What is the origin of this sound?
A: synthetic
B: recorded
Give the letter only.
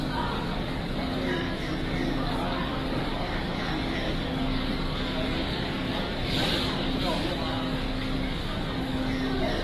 A